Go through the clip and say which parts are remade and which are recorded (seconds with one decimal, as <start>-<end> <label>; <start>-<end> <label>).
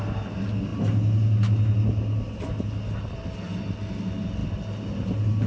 0.0-5.5 recorded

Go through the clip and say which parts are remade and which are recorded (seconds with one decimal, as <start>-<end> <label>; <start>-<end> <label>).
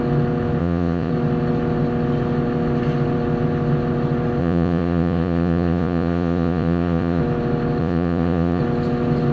0.0-0.6 recorded; 0.6-1.1 remade; 1.1-4.4 recorded; 4.4-7.2 remade; 7.2-7.8 recorded; 7.8-8.6 remade; 8.6-9.3 recorded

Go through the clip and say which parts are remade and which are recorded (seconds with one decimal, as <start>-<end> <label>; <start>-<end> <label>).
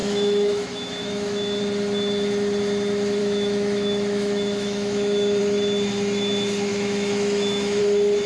0.0-1.6 remade; 1.6-3.2 recorded; 3.2-5.4 remade; 5.4-6.7 recorded; 6.7-7.8 remade; 7.8-8.3 recorded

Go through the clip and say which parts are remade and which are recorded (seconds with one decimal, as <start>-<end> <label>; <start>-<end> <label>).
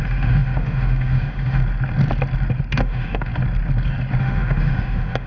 0.0-1.6 remade; 1.6-2.7 recorded; 2.7-3.3 remade; 3.3-4.2 recorded; 4.2-5.3 remade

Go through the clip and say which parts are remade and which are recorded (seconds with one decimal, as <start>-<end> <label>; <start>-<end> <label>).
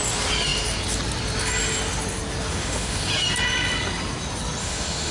0.0-2.5 recorded; 2.5-3.1 remade; 3.1-4.6 recorded; 4.6-5.1 remade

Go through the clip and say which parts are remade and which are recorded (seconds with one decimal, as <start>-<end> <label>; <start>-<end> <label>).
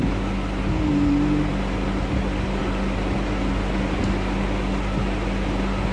0.0-5.9 recorded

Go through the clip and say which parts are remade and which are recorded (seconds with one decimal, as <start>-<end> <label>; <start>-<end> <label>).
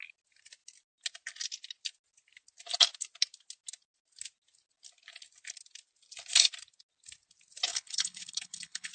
0.0-7.7 recorded; 7.7-8.9 remade